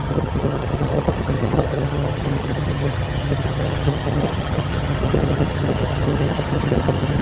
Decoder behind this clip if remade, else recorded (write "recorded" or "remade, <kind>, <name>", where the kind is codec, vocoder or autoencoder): remade, vocoder, HiFi-GAN